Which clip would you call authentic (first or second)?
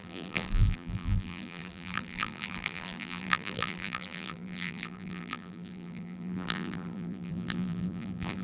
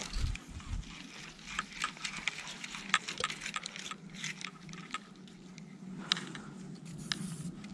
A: second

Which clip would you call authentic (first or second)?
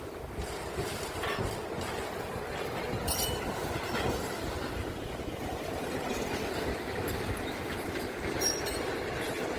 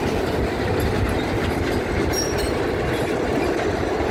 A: second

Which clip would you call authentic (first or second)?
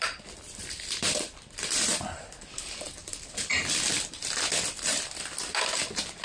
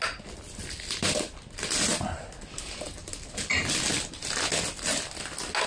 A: second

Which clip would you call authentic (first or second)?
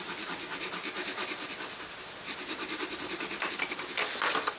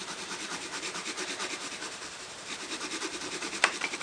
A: first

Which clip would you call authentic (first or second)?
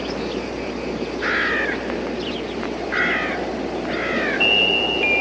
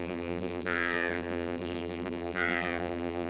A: first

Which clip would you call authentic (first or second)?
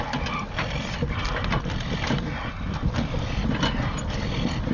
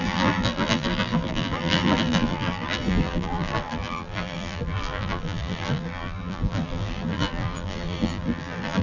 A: first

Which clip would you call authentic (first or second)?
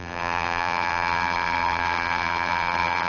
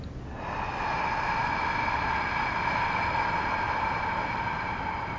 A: second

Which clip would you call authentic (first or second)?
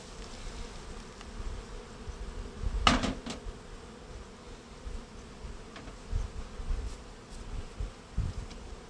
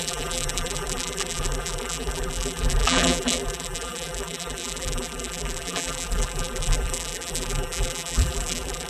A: first